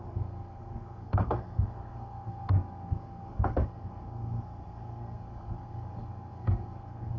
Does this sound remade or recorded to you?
remade